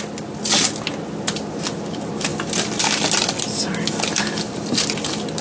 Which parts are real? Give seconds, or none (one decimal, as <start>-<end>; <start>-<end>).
0.0-5.4